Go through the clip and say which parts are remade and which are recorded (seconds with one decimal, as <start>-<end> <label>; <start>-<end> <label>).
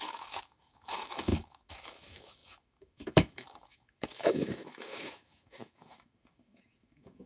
0.0-7.3 remade